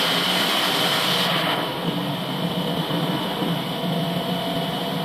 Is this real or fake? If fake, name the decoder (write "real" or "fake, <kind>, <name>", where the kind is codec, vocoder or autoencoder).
real